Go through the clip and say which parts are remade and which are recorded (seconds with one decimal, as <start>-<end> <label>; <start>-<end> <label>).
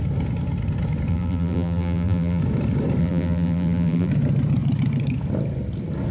0.0-1.1 recorded; 1.1-2.4 remade; 2.4-3.0 recorded; 3.0-4.1 remade; 4.1-6.1 recorded